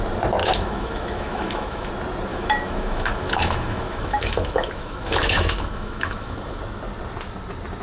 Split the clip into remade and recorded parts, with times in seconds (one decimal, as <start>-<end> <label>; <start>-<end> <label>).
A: 0.0-0.4 recorded; 0.4-1.9 remade; 1.9-2.3 recorded; 2.3-6.6 remade; 6.6-7.8 recorded